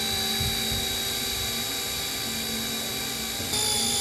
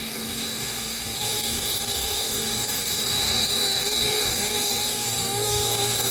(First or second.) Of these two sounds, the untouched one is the first